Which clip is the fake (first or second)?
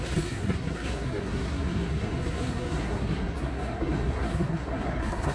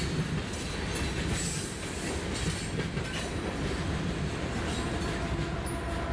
first